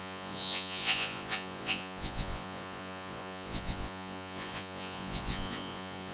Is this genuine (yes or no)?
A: no